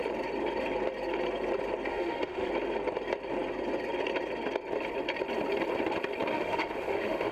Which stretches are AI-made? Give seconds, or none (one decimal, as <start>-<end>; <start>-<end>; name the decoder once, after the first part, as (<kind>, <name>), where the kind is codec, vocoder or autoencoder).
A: 1.9-2.5 (autoencoder, DAC-VAE); 6.3-7.3